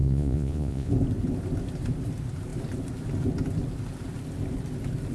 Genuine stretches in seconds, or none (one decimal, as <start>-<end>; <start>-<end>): 0.9-5.1